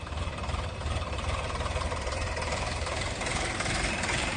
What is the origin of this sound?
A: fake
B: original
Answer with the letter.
A